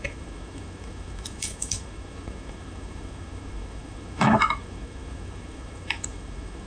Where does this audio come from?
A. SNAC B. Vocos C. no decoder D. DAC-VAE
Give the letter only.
D